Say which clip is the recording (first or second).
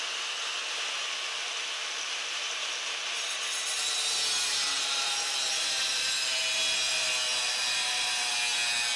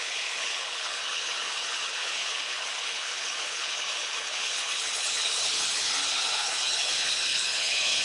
first